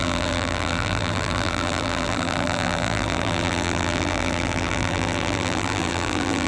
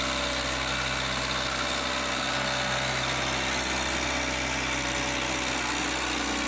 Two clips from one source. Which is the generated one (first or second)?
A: first